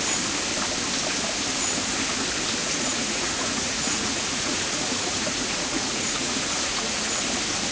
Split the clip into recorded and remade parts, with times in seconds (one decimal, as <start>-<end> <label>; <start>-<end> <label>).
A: 0.0-2.6 recorded; 2.6-7.2 remade; 7.2-7.7 recorded